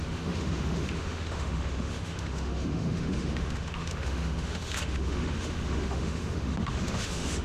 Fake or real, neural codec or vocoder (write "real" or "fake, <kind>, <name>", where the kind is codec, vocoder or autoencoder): fake, autoencoder, DAC-VAE